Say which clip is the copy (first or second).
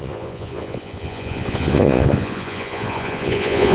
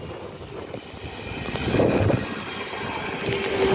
first